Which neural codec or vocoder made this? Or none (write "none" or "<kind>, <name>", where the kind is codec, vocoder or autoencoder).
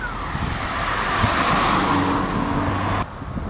none